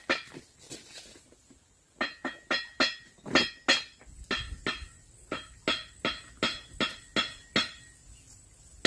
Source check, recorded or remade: recorded